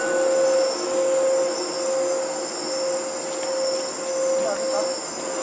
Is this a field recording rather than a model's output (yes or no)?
yes